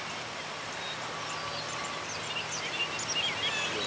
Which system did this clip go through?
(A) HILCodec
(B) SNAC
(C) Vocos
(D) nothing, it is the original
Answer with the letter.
D